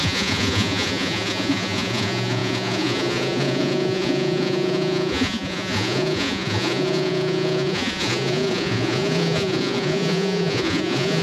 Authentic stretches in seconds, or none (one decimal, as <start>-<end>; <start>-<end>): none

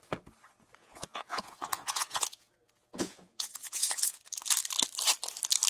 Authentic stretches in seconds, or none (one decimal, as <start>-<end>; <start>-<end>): 0.0-0.8; 4.2-5.7

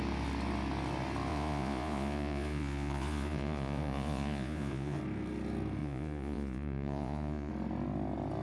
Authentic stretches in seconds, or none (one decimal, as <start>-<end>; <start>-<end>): 0.0-1.3; 5.0-5.8; 7.5-8.4